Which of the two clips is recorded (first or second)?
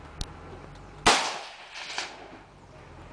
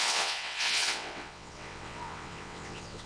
first